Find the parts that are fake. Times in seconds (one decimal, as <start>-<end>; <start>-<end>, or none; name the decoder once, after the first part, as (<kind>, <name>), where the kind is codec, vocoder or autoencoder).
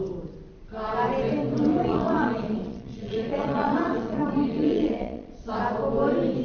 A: 1.7-5.5 (vocoder, Vocos)